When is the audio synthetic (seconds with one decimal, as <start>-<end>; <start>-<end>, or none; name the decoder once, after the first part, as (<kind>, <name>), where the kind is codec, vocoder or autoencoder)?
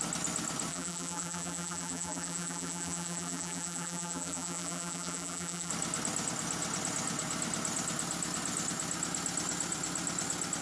0.7-5.7 (vocoder, BigVGAN v2)